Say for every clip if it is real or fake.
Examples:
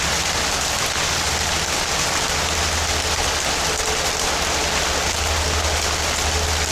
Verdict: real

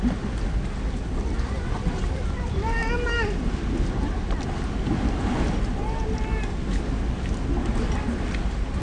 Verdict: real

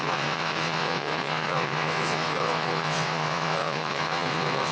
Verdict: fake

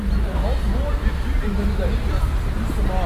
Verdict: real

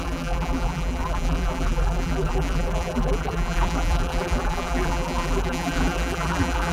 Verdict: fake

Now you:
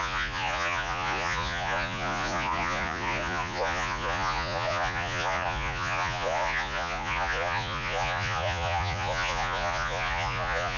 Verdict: fake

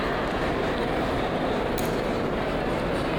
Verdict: real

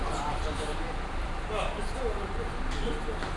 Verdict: real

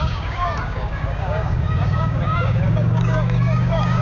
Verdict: fake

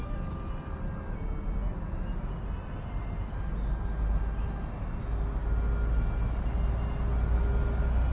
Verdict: real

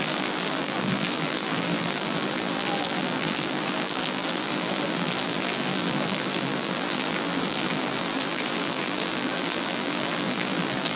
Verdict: fake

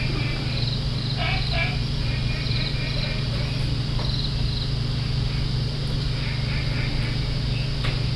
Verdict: real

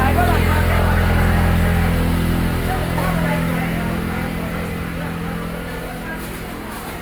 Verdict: real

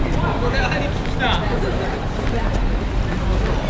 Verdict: real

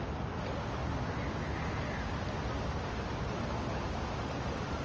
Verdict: real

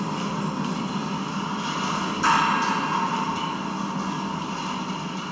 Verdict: real